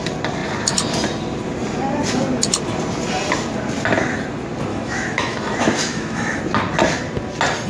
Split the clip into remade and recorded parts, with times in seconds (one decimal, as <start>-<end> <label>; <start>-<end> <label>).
0.0-4.7 recorded; 4.7-6.4 remade; 6.4-7.7 recorded